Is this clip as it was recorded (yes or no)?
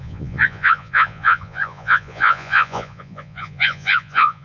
no